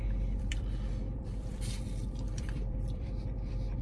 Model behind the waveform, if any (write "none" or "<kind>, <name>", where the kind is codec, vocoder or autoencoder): vocoder, BigVGAN v2